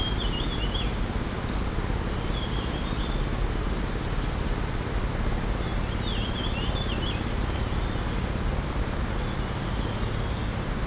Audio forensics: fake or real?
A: real